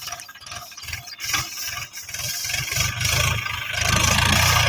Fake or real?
real